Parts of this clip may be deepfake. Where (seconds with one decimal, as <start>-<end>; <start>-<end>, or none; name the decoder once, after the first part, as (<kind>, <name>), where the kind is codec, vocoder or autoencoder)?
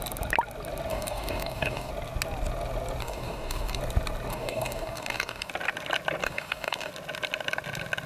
0.9-1.9 (codec, DAC); 3.0-3.8; 4.3-5.5; 6.2-6.9